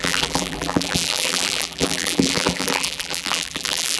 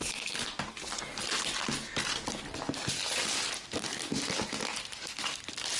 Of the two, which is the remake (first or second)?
first